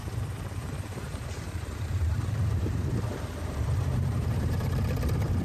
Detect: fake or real fake